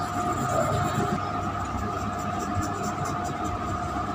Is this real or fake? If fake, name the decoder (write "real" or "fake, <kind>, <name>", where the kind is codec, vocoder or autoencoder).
real